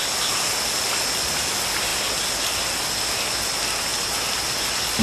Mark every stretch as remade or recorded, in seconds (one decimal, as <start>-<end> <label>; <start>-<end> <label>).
0.0-1.9 recorded; 1.9-2.6 remade; 2.6-3.9 recorded; 3.9-5.0 remade